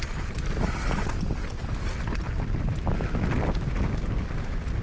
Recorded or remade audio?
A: recorded